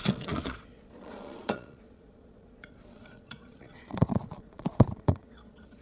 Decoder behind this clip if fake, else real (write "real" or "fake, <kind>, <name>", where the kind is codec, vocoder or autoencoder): fake, vocoder, Vocos